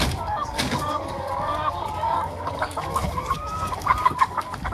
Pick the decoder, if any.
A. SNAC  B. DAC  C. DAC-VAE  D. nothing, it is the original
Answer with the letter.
B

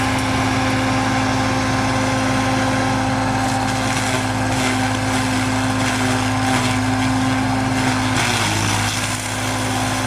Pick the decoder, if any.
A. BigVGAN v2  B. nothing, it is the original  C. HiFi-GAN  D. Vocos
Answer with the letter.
B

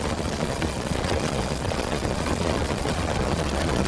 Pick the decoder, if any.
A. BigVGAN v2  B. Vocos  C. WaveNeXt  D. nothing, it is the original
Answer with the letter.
B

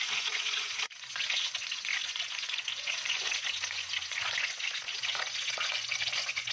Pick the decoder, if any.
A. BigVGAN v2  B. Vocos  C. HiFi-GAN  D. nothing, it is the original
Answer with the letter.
B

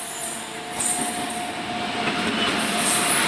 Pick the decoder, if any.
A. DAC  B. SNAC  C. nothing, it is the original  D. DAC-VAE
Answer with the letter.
C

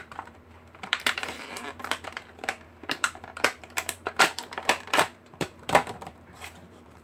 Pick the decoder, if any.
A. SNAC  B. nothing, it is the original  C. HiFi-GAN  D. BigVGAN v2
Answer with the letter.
D